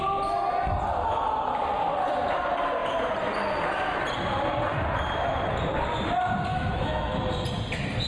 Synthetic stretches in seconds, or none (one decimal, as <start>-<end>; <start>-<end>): 6.5-7.2